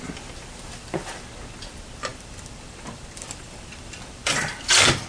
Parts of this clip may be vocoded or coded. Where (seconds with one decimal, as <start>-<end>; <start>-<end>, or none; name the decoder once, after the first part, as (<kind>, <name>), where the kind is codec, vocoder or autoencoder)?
2.1-4.5 (vocoder, BigVGAN v2)